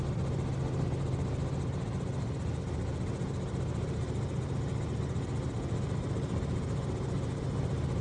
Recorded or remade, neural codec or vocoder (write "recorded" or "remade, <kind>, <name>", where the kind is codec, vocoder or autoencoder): recorded